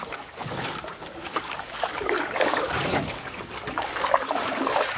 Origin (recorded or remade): remade